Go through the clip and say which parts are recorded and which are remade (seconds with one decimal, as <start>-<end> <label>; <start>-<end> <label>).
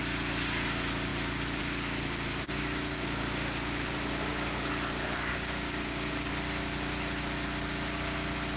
0.0-2.6 recorded; 2.6-3.2 remade; 3.2-5.3 recorded; 5.3-6.3 remade; 6.3-8.6 recorded